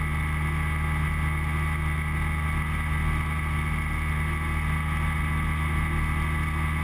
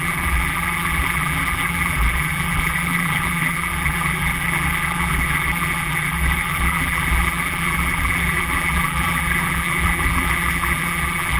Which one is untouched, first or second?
first